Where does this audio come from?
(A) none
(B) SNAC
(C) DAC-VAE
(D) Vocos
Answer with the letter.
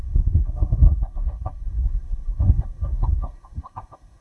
B